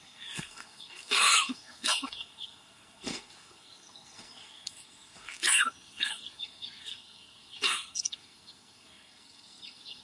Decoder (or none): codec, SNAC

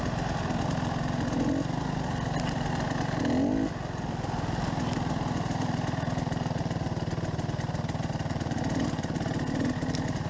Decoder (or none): none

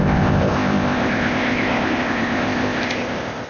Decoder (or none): codec, ZipCodec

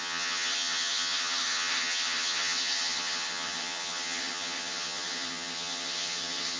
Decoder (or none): vocoder, HiFi-GAN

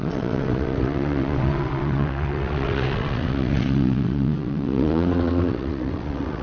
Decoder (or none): vocoder, WaveNeXt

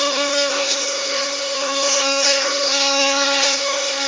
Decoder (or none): codec, SNAC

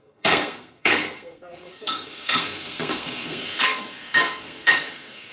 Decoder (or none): codec, SNAC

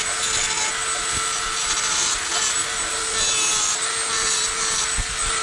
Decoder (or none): none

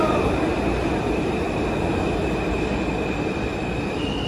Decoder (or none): none